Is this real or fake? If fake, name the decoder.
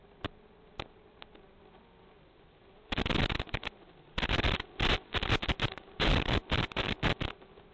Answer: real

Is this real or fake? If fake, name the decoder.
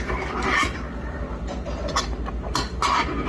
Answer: real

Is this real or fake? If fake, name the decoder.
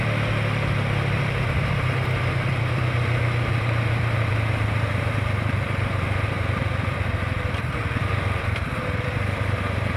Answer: fake, vocoder, BigVGAN v2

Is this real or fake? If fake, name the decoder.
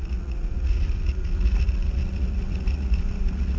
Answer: fake, vocoder, Vocos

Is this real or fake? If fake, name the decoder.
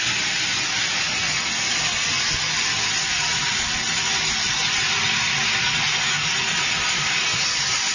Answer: real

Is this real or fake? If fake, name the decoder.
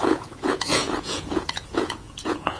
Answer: fake, vocoder, Vocos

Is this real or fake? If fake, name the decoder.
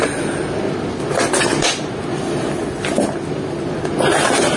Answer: real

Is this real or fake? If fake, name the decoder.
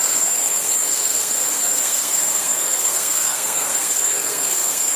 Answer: fake, codec, SNAC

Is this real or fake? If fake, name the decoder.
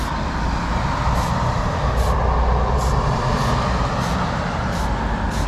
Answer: real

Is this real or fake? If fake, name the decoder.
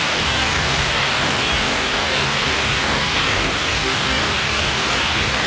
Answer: fake, codec, DAC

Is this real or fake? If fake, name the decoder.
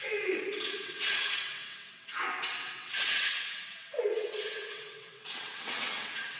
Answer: fake, vocoder, WaveNeXt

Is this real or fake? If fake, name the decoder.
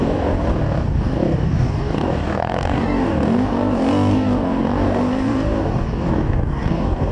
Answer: fake, codec, DAC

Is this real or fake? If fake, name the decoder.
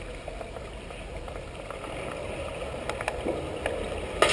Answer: real